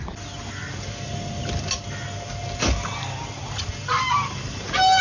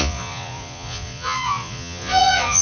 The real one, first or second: first